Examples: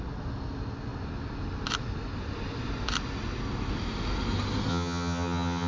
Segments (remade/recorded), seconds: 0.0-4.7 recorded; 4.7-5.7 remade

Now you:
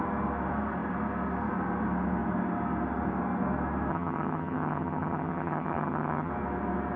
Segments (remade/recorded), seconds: 0.0-3.9 recorded; 3.9-6.3 remade; 6.3-7.0 recorded

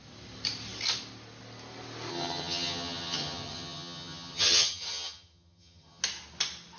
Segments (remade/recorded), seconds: 0.0-2.1 recorded; 2.1-6.0 remade; 6.0-6.8 recorded

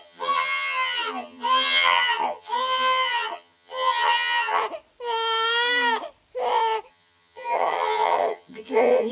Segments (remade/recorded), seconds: 0.0-4.6 remade; 4.6-6.9 recorded; 6.9-9.1 remade

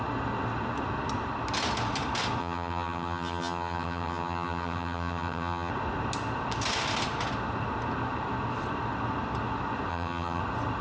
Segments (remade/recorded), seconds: 0.0-2.4 recorded; 2.4-5.7 remade; 5.7-9.9 recorded; 9.9-10.4 remade; 10.4-10.8 recorded